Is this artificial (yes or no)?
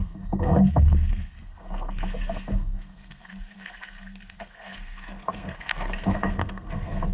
yes